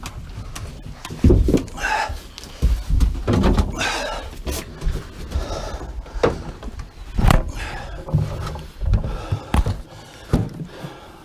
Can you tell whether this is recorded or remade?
recorded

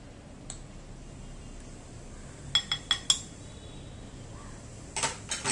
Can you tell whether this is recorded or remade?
recorded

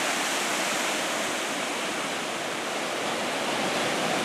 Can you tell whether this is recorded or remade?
remade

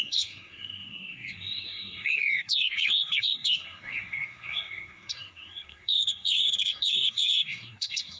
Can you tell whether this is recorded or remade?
remade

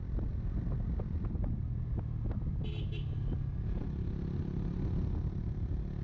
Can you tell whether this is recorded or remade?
recorded